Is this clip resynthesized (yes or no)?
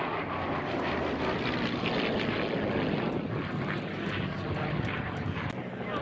no